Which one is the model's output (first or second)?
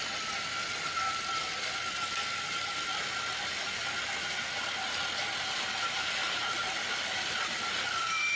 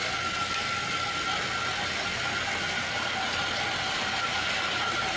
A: first